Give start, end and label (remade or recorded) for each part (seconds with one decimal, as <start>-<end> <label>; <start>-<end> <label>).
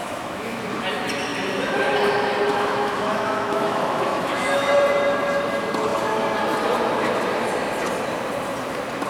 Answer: 0.0-0.6 remade; 0.6-2.5 recorded; 2.5-4.7 remade; 4.7-9.1 recorded